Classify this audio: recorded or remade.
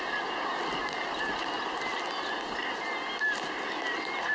recorded